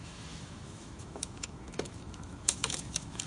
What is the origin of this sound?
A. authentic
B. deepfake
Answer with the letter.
B